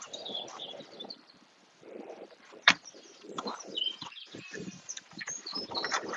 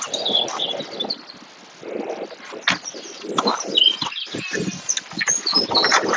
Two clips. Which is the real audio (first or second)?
second